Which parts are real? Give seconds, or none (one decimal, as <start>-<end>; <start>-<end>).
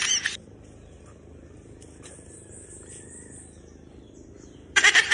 none